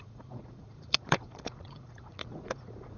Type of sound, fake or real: fake